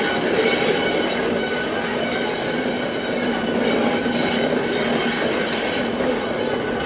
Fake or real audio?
real